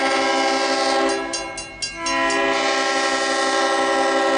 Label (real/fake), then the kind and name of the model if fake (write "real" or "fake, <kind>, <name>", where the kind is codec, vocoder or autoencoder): real